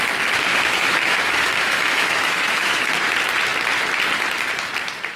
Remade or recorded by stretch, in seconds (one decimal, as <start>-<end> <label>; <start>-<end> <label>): 0.0-0.5 recorded; 0.5-2.9 remade; 2.9-5.2 recorded